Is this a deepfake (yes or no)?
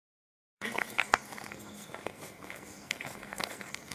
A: yes